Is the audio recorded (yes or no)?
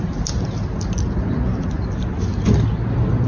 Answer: yes